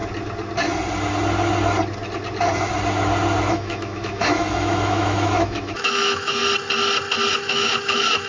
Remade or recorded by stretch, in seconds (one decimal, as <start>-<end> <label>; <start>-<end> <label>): 0.0-3.5 recorded; 3.5-6.4 remade; 6.4-7.3 recorded; 7.3-8.3 remade